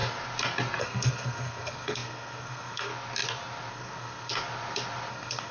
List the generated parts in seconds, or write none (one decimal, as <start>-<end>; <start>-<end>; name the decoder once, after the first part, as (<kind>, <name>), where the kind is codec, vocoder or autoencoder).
0.8-2.9 (codec, SNAC); 3.7-4.3; 5.1-5.5